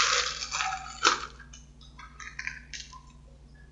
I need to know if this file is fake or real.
real